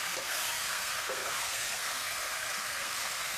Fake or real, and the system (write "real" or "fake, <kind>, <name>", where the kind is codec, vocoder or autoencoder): fake, codec, SNAC